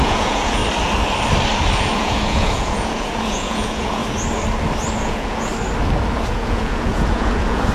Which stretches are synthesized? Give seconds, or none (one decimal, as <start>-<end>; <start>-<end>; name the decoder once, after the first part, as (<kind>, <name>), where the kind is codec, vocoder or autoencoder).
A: 0.0-0.6 (vocoder, Vocos); 1.8-4.0; 5.0-5.5; 6.3-7.7